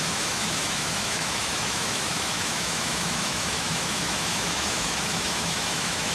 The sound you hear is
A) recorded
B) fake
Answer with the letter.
B